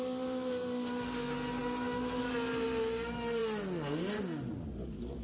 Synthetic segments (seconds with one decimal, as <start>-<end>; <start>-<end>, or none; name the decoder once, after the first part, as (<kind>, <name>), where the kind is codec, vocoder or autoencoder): none